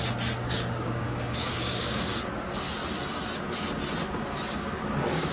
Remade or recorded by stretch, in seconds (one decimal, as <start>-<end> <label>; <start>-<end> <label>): 0.0-0.5 recorded; 0.5-2.1 remade; 2.1-4.6 recorded; 4.6-5.3 remade